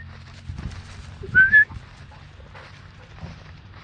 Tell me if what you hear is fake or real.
real